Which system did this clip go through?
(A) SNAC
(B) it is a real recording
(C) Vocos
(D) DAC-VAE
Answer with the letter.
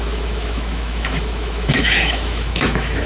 D